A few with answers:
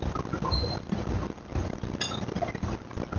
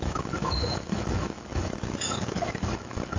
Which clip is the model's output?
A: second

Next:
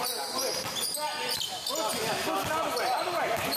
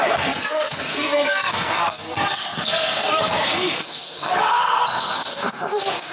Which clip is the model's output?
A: second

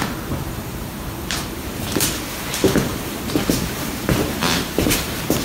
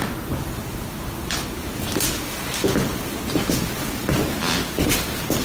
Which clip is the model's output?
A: first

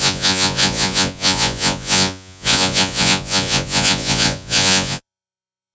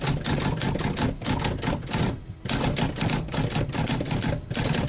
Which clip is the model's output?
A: first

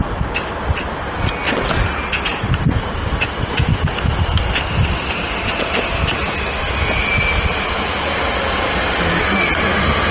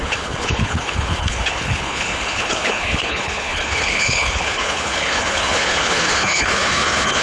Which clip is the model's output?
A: second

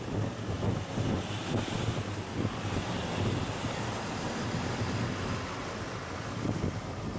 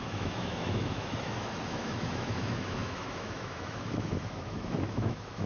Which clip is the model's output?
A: second